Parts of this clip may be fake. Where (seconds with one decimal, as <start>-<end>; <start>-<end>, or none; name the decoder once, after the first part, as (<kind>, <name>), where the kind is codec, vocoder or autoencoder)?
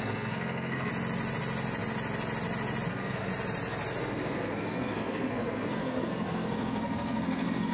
0.0-0.9 (codec, SNAC); 2.9-3.3; 4.0-7.7